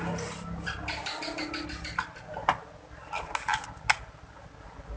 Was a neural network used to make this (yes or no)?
no